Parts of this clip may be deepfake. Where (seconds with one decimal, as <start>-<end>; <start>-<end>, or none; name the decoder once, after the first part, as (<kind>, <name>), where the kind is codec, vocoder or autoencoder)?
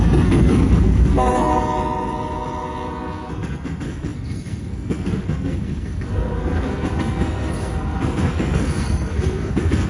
0.0-1.5 (codec, SNAC); 3.3-9.9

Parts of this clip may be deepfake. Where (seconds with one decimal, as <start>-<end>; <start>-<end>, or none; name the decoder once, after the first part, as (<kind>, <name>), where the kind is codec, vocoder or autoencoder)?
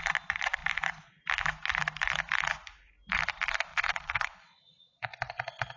3.7-5.8 (vocoder, WaveNeXt)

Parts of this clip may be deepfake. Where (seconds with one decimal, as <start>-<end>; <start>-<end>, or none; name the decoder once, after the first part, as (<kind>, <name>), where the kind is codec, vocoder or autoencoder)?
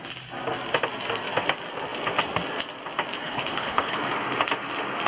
3.2-4.0 (codec, HILCodec)